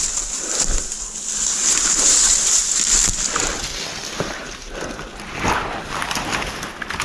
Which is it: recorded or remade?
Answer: recorded